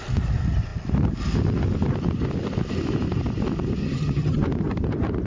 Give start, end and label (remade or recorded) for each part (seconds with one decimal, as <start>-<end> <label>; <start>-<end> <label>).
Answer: 0.0-3.8 recorded; 3.8-4.4 remade; 4.4-5.3 recorded